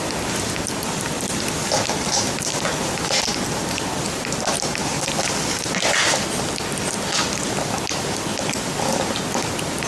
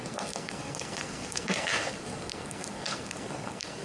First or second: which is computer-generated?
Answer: second